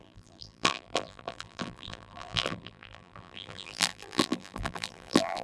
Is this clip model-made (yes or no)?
yes